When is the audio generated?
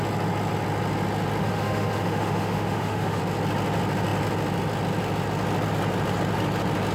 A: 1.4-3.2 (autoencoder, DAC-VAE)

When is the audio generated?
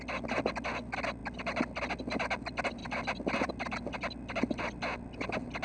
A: 2.8-3.5 (vocoder, BigVGAN v2)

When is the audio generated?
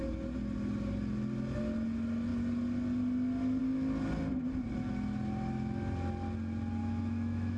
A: 6.8-7.6 (autoencoder, DAC-VAE)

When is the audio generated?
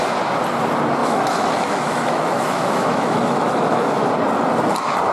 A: 1.0-4.1 (autoencoder, DAC-VAE)